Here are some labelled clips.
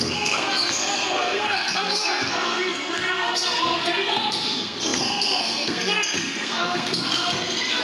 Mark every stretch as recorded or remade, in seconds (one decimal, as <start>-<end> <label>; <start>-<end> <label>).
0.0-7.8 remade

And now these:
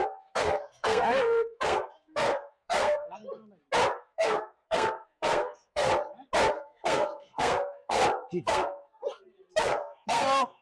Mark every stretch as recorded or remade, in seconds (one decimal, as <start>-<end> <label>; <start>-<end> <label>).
0.0-3.2 remade; 3.2-4.0 recorded; 4.0-5.9 remade; 5.9-6.5 recorded; 6.5-8.0 remade; 8.0-8.5 recorded; 8.5-9.0 remade; 9.0-9.6 recorded; 9.6-10.6 remade

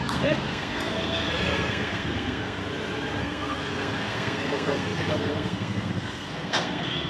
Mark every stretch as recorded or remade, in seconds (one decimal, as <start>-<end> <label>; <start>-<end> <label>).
0.0-2.6 remade; 2.6-3.2 recorded; 3.2-7.1 remade